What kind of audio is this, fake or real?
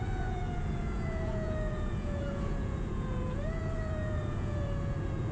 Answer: fake